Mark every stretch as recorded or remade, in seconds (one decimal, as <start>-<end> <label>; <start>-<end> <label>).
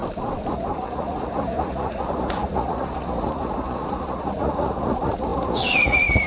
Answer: 0.0-0.5 recorded; 0.5-6.3 remade